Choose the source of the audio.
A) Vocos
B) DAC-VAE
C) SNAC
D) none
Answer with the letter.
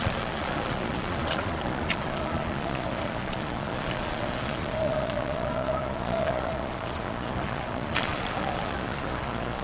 A